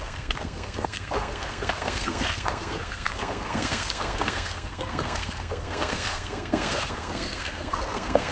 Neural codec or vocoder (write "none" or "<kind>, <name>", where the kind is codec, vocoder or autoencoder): codec, SNAC